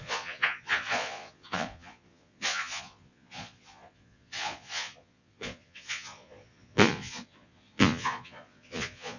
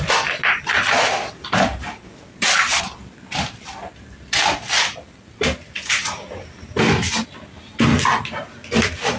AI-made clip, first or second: first